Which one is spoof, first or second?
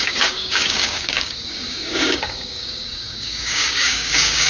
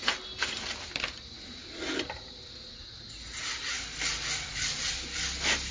first